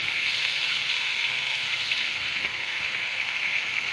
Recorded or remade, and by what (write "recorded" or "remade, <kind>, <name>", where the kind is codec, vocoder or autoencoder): remade, codec, SNAC